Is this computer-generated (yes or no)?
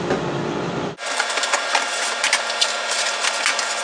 no